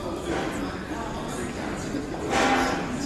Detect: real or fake real